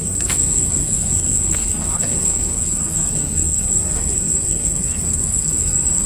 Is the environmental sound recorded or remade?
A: remade